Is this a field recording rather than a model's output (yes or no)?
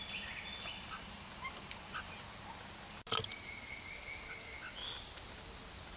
yes